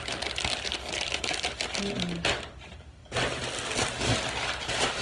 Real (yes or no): yes